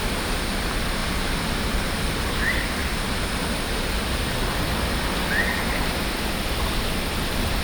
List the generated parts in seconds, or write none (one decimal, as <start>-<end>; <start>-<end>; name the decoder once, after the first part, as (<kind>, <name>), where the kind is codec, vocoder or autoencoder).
none